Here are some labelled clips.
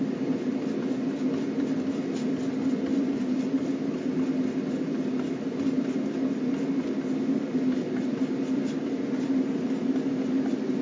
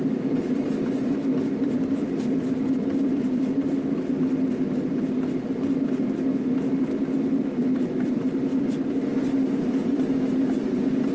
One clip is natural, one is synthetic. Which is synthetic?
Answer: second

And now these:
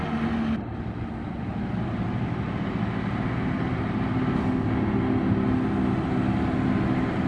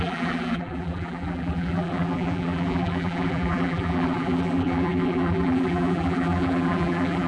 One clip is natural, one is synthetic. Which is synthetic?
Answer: second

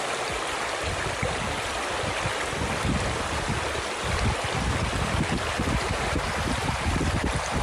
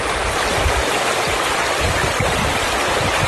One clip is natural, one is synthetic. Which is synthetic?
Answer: second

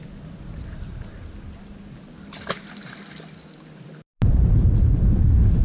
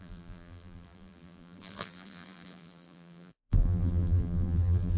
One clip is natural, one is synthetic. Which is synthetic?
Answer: second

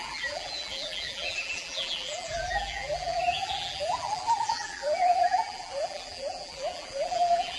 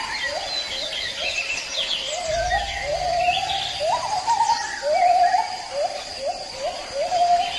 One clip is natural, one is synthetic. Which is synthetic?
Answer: first